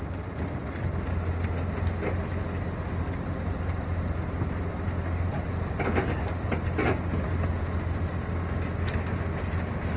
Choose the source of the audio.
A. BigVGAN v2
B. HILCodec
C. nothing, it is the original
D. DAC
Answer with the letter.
C